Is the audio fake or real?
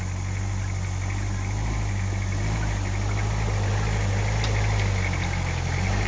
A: real